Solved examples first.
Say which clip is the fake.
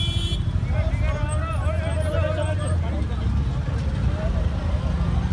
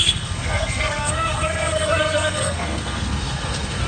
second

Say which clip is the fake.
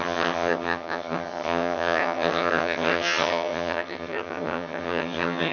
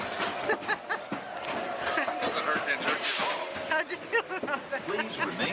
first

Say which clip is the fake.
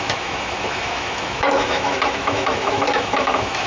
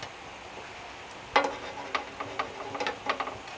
first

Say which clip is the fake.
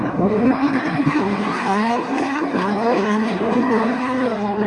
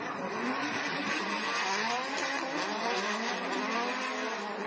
first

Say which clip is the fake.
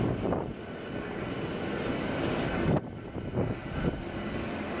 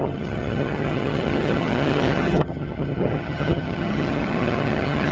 second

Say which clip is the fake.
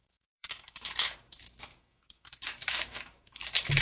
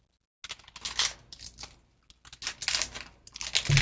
first